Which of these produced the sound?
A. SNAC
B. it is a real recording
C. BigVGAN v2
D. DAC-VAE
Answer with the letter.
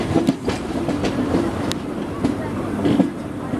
B